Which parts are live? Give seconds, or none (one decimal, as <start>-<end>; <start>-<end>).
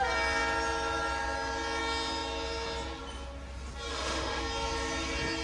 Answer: 0.0-3.9; 4.4-5.4